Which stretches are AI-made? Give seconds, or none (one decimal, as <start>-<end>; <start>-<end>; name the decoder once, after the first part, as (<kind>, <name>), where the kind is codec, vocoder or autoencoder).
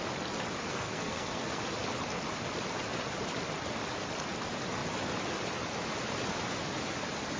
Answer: 0.6-1.6 (codec, SNAC)